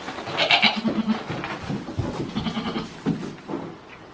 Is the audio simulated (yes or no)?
no